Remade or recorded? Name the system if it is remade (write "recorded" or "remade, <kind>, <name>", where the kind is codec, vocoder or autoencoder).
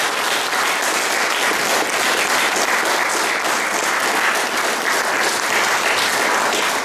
recorded